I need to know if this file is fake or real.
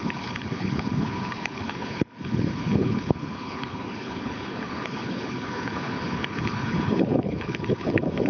fake